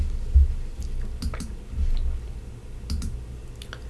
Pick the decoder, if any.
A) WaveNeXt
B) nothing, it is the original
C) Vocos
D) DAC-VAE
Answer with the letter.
B